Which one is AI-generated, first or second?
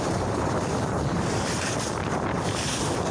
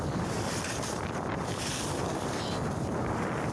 first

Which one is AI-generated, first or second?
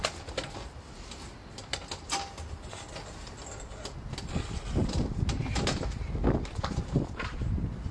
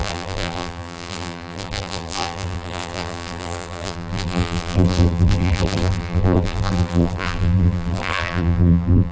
second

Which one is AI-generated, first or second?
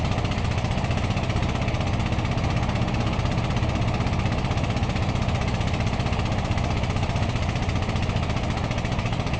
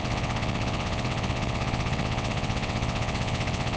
second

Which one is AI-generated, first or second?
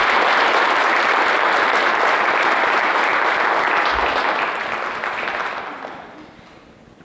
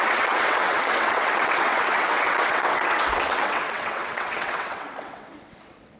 second